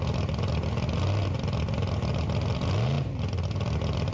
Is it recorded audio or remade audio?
recorded